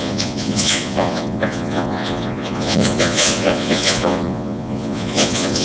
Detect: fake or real fake